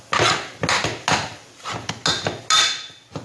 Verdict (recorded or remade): recorded